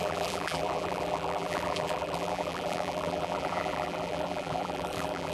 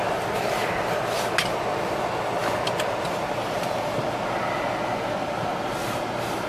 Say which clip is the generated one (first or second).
first